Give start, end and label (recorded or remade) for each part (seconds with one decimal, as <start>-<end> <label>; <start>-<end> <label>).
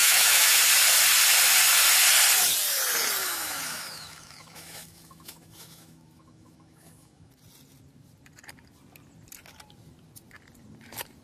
0.0-0.6 remade; 0.6-3.2 recorded; 3.2-7.3 remade; 7.3-11.2 recorded